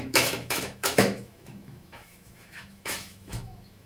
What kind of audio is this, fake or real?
fake